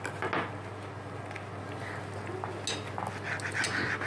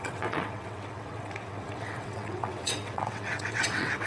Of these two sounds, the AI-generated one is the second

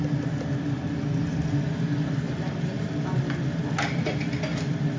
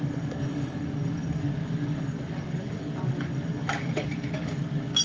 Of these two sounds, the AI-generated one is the second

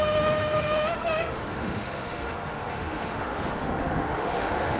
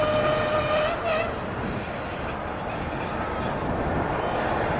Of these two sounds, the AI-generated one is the first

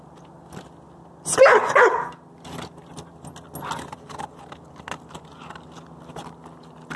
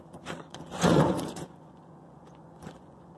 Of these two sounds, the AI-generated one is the second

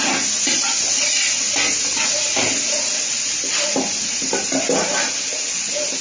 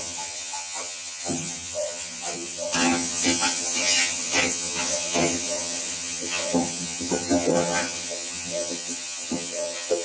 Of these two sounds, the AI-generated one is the second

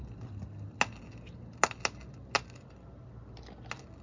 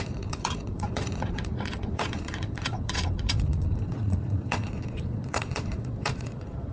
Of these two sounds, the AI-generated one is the second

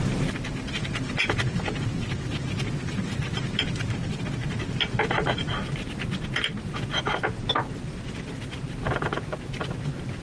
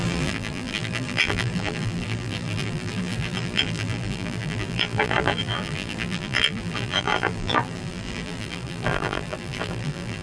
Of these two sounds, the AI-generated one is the second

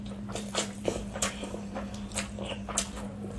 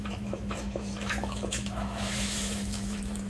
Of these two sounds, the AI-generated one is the second